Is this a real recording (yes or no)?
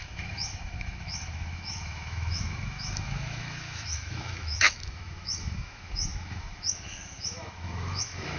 no